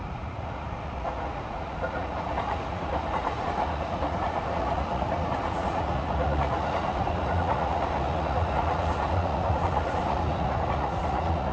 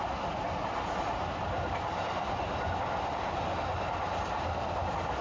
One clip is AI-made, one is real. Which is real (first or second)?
second